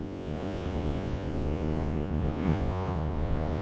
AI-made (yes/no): yes